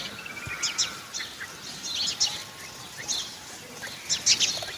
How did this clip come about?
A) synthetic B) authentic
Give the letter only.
B